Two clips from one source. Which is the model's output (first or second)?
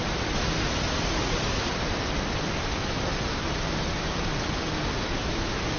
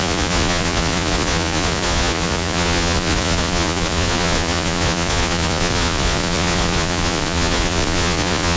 second